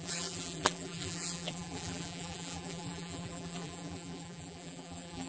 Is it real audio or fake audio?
fake